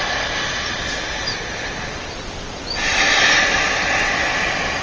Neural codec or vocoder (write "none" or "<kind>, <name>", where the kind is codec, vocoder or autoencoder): none